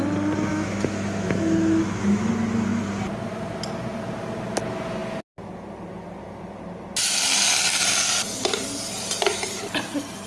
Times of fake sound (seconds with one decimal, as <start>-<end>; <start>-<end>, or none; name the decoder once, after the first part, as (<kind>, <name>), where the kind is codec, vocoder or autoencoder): 0.5-2.3 (autoencoder, DAC-VAE)